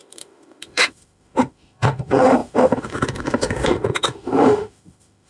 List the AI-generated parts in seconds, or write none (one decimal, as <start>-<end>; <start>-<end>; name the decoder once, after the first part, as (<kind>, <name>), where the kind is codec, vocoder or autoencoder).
0.0-5.3 (autoencoder, DAC-VAE)